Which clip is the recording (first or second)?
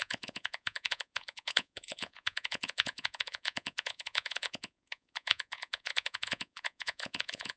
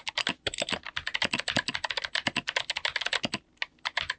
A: second